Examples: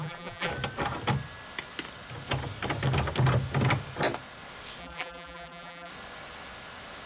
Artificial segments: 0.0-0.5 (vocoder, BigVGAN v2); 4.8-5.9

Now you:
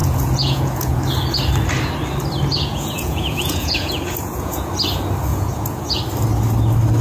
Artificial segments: 0.0-1.0 (vocoder, Vocos); 2.5-4.7; 5.3-6.0

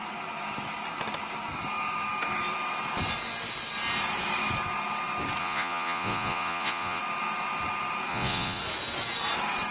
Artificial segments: 5.4-7.0 (vocoder, Vocos); 8.1-8.6

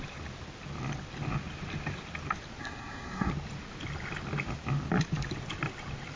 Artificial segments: 2.6-3.3 (codec, SNAC)

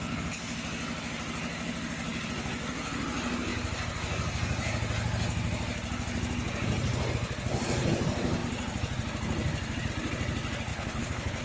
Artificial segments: 10.7-11.4 (codec, HILCodec)